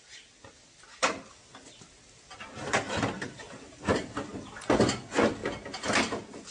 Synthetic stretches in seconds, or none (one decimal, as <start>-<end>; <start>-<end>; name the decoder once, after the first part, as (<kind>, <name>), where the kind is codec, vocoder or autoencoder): none